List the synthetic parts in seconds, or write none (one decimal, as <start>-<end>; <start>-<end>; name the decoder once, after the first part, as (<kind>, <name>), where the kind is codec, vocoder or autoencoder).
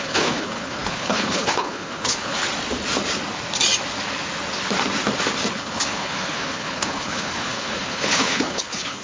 0.0-2.4 (codec, HILCodec); 5.5-9.0